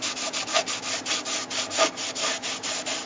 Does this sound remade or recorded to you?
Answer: recorded